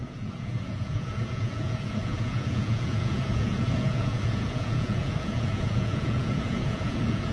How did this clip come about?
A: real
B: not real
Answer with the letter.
B